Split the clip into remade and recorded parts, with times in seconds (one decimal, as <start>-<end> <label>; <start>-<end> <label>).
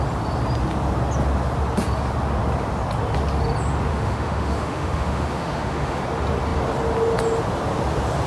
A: 0.0-3.9 recorded; 3.9-6.0 remade; 6.0-8.3 recorded